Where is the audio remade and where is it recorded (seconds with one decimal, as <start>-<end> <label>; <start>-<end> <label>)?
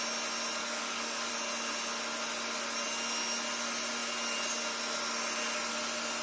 0.0-0.6 recorded; 0.6-1.3 remade; 1.3-6.2 recorded